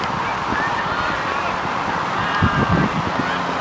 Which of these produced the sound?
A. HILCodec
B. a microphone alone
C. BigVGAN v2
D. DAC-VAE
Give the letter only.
B